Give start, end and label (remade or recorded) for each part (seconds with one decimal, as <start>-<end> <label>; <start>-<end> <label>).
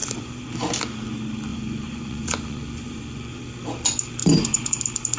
0.0-0.5 remade; 0.5-1.5 recorded; 1.5-3.4 remade; 3.4-4.2 recorded; 4.2-4.8 remade; 4.8-5.2 recorded